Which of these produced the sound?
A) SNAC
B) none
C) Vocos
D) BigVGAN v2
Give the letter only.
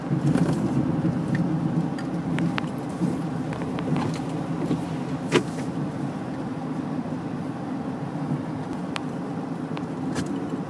B